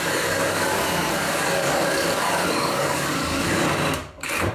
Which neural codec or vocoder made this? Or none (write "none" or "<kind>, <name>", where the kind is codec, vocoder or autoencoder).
codec, DAC